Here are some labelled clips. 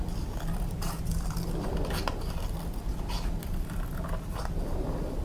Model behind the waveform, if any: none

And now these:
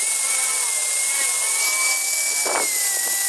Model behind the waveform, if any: none